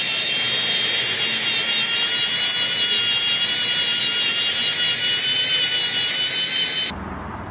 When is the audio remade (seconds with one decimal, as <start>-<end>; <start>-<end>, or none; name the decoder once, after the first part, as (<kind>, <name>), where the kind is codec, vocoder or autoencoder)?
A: none